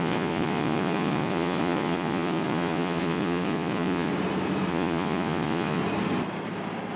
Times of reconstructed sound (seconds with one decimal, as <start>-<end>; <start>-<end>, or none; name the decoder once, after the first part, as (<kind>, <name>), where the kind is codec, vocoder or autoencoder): 0.0-4.1 (vocoder, Vocos); 4.7-5.8